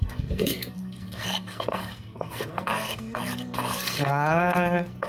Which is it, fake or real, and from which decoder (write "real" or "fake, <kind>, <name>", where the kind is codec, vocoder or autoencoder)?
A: fake, codec, SNAC